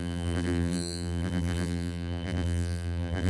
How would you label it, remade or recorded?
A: remade